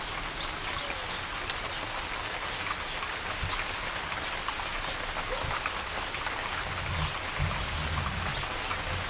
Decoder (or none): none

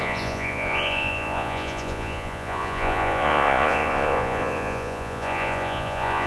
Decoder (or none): vocoder, Vocos